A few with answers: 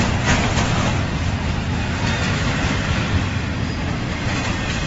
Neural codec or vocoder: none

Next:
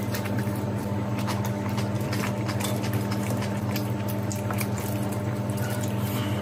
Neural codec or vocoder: vocoder, BigVGAN v2